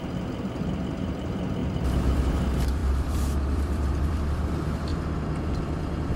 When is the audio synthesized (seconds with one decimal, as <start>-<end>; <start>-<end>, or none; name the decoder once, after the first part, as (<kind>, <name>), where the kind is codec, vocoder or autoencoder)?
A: 0.0-4.9 (vocoder, BigVGAN v2); 5.6-6.2